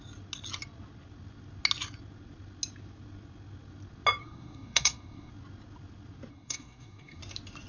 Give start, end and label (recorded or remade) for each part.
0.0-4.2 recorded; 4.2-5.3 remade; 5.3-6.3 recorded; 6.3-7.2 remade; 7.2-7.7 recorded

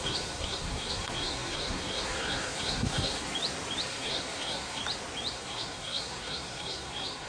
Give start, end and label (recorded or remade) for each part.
0.0-3.3 remade; 3.3-3.9 recorded; 3.9-4.8 remade; 4.8-5.3 recorded; 5.3-7.3 remade

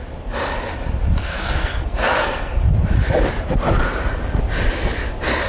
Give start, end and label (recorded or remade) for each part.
0.0-1.2 recorded; 1.2-2.6 remade; 2.6-5.5 recorded

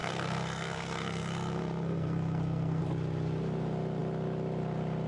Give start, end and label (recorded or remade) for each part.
0.0-2.8 remade; 2.8-5.1 recorded

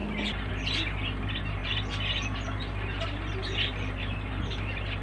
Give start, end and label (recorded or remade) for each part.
0.0-5.0 recorded

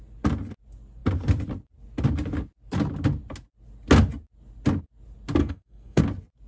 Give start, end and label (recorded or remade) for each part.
0.0-5.4 recorded; 5.4-6.0 remade; 6.0-6.5 recorded